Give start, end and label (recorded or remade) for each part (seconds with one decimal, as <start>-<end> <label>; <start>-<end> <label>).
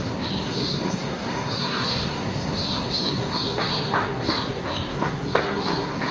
0.0-6.1 remade